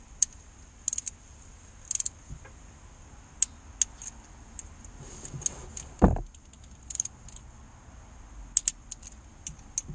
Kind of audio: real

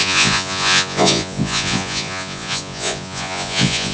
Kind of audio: fake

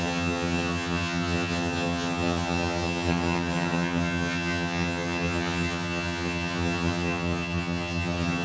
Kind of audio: fake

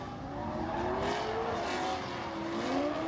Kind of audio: real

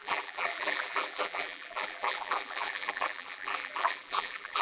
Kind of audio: fake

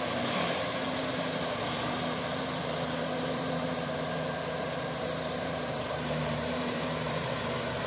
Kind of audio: fake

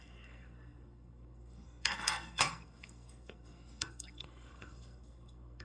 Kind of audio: fake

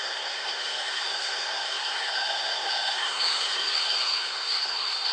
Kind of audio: fake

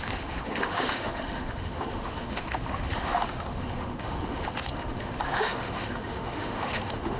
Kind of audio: fake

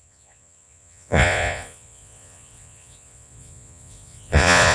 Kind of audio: fake